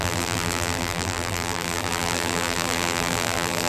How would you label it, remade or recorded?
remade